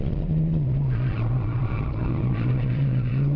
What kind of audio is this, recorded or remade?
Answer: remade